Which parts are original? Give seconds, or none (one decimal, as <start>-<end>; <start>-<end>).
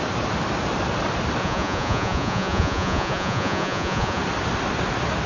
0.0-1.4; 4.2-5.3